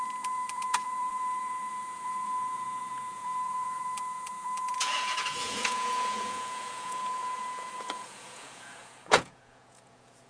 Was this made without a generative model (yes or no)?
no